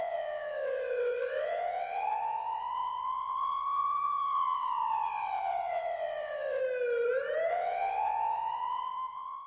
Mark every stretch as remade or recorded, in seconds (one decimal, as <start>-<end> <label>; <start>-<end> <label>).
0.0-6.6 remade; 6.6-7.5 recorded; 7.5-9.5 remade